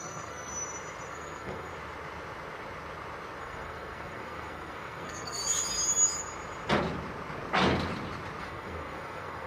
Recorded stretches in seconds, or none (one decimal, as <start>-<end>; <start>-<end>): 0.5-1.1; 1.7-3.4; 5.4-8.4